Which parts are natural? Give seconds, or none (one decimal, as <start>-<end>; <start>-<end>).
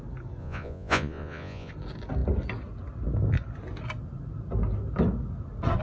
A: 0.0-0.4; 1.7-5.8